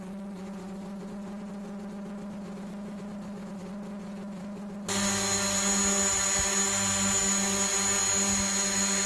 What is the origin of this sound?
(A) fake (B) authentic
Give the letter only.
B